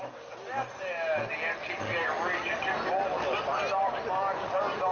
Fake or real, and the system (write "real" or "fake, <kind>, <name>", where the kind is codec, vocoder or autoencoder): real